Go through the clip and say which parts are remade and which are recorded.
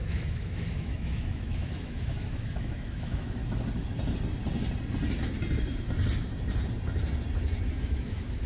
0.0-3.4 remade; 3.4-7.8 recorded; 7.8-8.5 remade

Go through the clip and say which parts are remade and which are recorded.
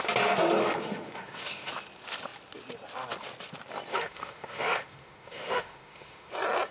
0.0-0.6 recorded; 0.6-1.7 remade; 1.7-3.9 recorded; 3.9-6.3 remade; 6.3-6.7 recorded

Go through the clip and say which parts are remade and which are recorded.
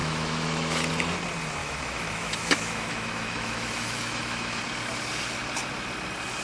0.0-0.9 remade; 0.9-1.6 recorded; 1.6-4.6 remade; 4.6-6.4 recorded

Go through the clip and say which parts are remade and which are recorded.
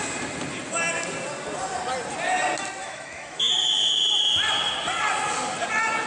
0.0-2.8 recorded; 2.8-3.5 remade; 3.5-6.1 recorded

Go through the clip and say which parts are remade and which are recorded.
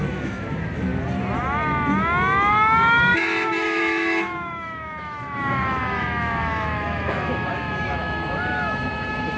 0.0-0.9 remade; 0.9-2.5 recorded; 2.5-9.4 remade